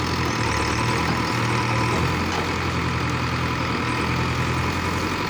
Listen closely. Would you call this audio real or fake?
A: real